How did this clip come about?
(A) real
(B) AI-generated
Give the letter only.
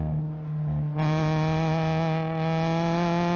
A